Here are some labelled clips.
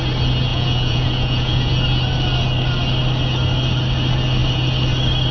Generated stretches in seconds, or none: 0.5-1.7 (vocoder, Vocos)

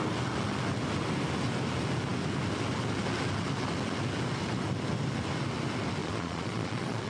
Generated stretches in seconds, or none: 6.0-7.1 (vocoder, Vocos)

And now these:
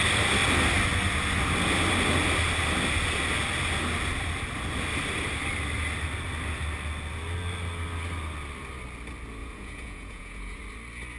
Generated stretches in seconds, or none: 9.4-10.6 (vocoder, Vocos)

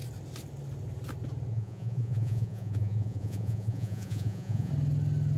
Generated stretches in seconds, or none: 1.5-4.7 (vocoder, Vocos)